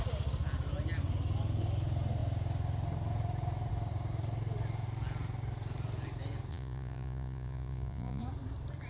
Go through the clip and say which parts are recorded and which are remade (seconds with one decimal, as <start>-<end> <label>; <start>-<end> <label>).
0.0-6.5 recorded; 6.5-8.2 remade; 8.2-8.9 recorded